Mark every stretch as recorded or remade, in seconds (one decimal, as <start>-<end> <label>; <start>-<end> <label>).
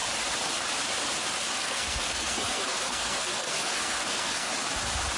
0.0-1.5 recorded; 1.5-4.5 remade; 4.5-5.2 recorded